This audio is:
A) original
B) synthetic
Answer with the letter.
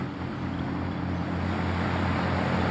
A